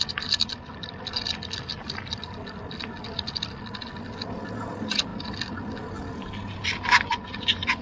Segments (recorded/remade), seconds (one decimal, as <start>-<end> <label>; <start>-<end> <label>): 0.0-7.8 recorded